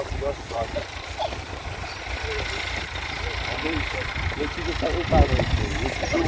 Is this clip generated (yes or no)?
yes